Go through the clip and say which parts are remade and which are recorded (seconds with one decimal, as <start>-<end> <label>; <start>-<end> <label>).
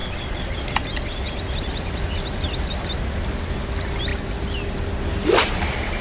0.0-6.0 recorded